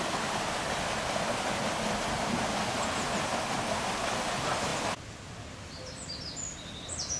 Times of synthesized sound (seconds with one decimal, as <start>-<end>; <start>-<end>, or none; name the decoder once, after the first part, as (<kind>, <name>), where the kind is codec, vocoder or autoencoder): none